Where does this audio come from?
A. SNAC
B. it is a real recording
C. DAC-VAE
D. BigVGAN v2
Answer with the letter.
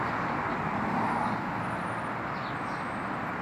B